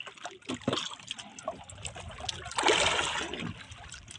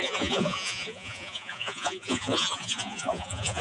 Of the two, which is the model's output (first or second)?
second